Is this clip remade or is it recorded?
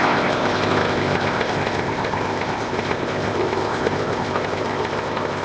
remade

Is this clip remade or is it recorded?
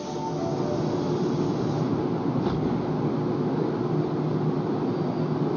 recorded